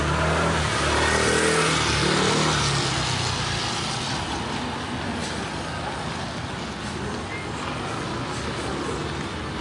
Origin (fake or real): real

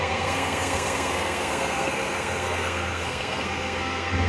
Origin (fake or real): fake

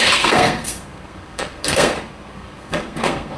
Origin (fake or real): fake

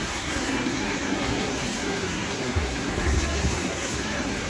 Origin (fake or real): fake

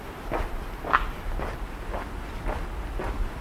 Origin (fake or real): real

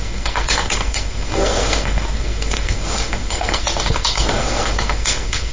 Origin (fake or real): fake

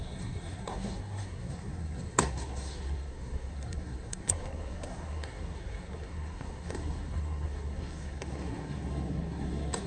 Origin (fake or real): fake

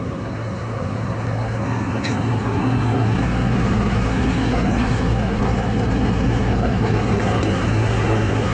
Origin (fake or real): fake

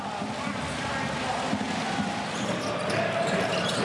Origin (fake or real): real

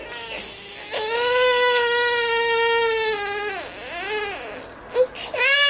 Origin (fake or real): real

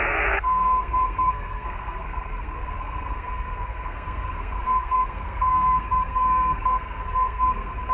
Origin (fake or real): fake